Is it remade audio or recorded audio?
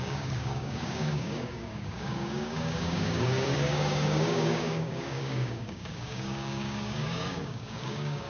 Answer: remade